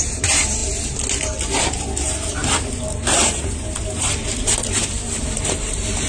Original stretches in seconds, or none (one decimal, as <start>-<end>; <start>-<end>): 0.6-2.3